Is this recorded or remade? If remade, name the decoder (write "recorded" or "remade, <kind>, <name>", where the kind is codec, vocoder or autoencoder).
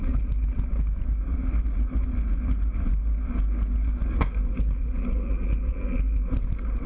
recorded